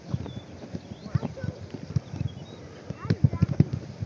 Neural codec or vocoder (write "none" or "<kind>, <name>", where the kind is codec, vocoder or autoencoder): none